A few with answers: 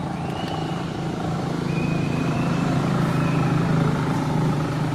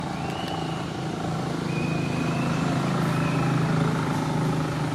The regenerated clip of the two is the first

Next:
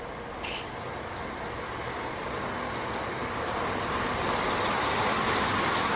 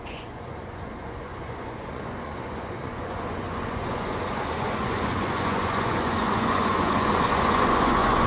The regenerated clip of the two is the second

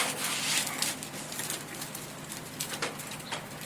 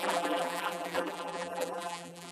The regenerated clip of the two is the second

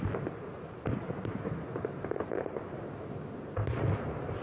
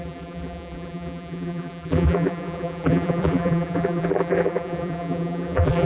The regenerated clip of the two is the second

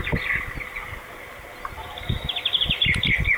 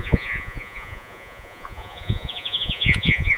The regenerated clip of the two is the second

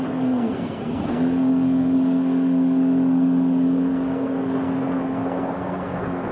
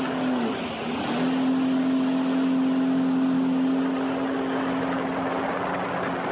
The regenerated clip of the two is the first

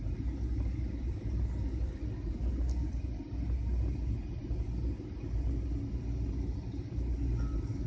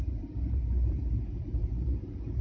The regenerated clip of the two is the second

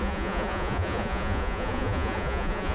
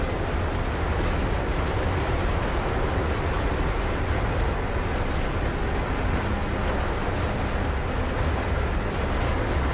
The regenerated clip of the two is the first